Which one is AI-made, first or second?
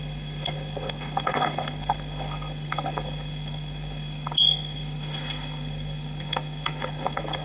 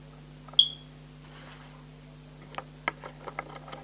first